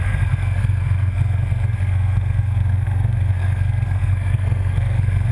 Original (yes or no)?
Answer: no